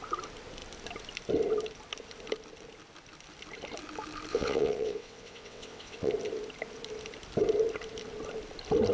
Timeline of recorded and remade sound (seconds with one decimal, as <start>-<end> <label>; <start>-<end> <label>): 0.0-4.3 recorded; 4.3-6.1 remade; 6.1-8.9 recorded